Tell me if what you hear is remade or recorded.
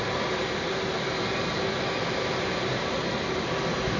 recorded